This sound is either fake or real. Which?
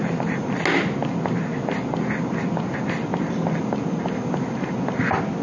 real